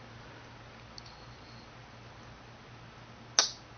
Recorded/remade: recorded